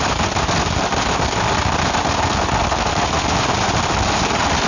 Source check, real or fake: real